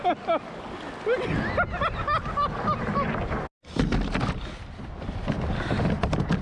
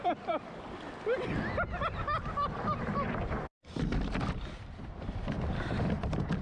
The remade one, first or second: second